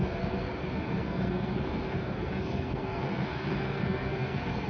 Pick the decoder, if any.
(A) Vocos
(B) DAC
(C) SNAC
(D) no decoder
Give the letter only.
C